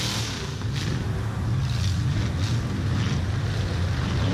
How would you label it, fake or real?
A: real